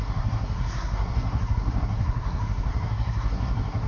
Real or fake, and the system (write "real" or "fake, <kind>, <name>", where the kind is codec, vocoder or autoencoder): fake, codec, SNAC